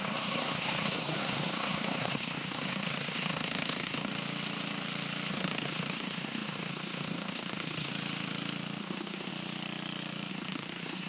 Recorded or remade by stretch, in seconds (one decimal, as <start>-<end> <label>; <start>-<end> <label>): 0.0-4.1 remade; 4.1-5.3 recorded; 5.3-7.9 remade; 7.9-8.8 recorded; 8.8-9.3 remade; 9.3-10.3 recorded; 10.3-11.1 remade